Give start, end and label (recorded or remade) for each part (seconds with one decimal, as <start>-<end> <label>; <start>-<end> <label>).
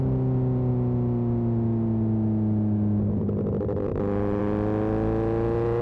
0.0-5.8 recorded